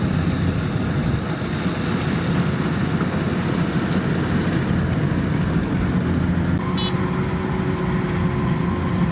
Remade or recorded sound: recorded